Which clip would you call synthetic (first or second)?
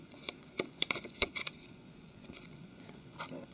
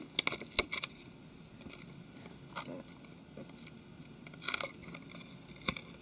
first